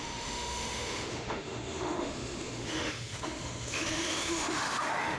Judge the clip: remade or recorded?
remade